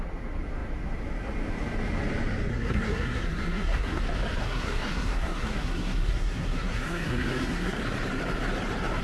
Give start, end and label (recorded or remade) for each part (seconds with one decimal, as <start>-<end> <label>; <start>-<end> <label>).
0.0-2.5 recorded; 2.5-4.0 remade; 4.0-4.4 recorded; 4.4-7.8 remade; 7.8-9.0 recorded